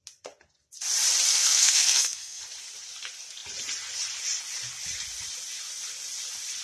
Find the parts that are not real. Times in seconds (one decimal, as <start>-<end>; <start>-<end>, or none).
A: 1.3-2.4